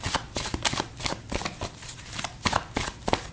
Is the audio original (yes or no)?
yes